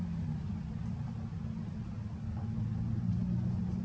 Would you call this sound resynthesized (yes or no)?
no